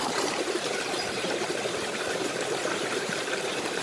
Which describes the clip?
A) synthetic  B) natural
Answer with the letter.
A